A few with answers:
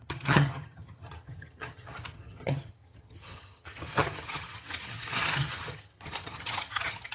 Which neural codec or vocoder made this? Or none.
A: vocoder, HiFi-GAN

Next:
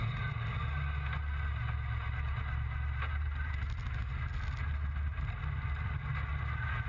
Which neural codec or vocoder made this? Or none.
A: none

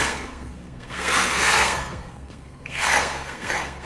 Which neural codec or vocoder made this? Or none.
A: codec, SNAC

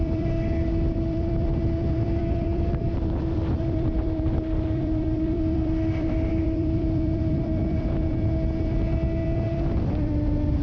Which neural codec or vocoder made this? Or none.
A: vocoder, BigVGAN v2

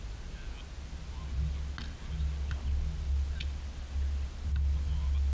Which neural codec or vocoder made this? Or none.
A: none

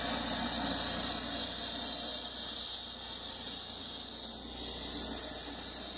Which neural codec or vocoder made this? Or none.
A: none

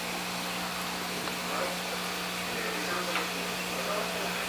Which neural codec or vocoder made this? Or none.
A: none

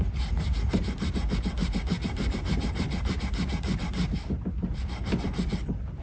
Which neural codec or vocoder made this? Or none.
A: none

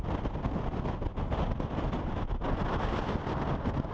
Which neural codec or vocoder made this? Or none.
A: none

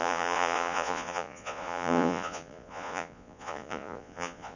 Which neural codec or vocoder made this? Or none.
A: vocoder, Vocos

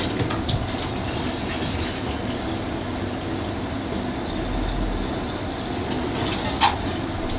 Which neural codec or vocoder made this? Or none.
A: none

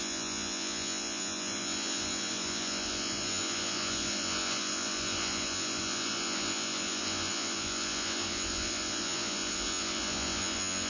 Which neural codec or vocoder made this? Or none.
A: vocoder, Vocos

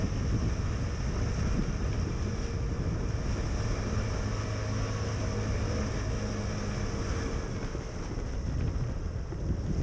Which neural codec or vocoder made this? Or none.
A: none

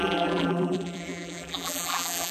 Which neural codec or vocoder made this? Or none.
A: vocoder, BigVGAN v2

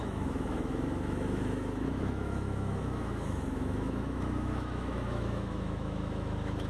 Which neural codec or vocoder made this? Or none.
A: autoencoder, DAC-VAE